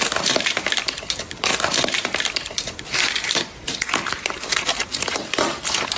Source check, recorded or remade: remade